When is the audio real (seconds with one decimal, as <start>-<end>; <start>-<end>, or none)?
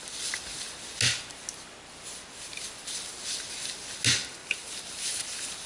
0.0-4.4